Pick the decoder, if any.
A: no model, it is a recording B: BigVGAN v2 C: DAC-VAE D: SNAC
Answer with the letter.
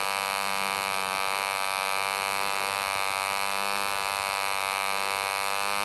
A